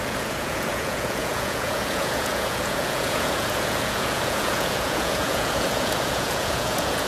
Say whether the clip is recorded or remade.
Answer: remade